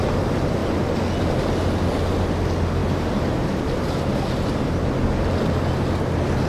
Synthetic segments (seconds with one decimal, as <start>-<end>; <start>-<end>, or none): none